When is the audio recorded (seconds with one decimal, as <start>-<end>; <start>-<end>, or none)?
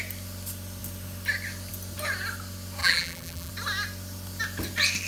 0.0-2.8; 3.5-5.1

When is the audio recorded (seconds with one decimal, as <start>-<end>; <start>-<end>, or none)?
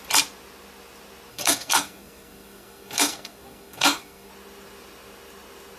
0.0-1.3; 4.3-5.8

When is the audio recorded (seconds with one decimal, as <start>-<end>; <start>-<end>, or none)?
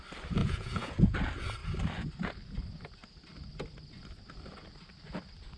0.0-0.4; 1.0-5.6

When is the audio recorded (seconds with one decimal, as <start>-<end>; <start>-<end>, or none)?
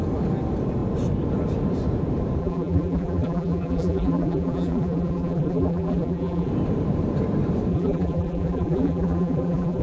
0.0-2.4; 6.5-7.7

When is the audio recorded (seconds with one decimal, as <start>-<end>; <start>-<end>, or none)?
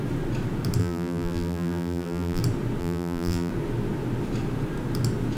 0.0-0.8; 2.4-2.8; 3.5-5.4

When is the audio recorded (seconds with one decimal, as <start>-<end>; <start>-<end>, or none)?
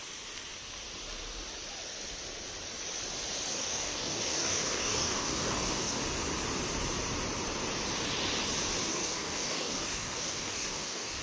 0.0-3.5; 6.0-8.9